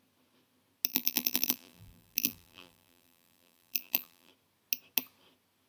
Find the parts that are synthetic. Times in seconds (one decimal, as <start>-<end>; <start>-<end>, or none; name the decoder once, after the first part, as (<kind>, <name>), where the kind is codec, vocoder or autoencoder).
0.9-4.3 (vocoder, BigVGAN v2)